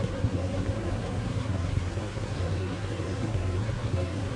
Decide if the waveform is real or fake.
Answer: fake